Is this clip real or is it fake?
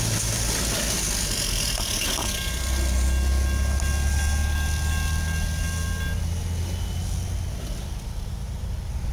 real